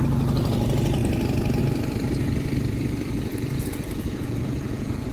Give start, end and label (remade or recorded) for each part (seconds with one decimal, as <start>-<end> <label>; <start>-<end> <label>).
0.0-3.3 recorded; 3.3-5.1 remade